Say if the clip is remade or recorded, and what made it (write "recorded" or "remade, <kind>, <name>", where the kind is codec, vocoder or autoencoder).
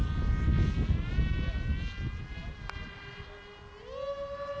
recorded